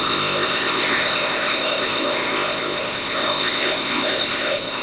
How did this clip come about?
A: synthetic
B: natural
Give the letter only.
A